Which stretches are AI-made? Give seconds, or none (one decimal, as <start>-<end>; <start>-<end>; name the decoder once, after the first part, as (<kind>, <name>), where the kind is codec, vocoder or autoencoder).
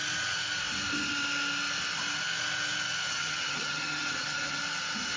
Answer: 3.1-4.6 (vocoder, HiFi-GAN)